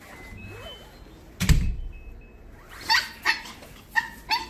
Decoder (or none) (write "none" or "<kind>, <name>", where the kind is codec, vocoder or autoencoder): none